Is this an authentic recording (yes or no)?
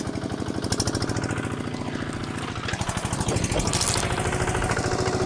yes